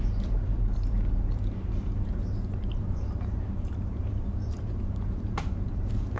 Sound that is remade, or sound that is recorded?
remade